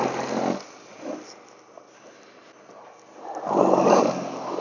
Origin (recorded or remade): recorded